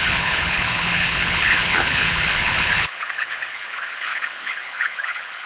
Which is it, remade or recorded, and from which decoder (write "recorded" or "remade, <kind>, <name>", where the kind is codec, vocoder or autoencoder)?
remade, codec, HILCodec